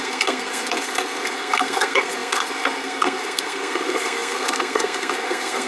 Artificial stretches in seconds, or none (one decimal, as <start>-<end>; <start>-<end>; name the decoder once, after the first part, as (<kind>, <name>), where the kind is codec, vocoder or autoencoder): 0.0-5.7 (codec, SNAC)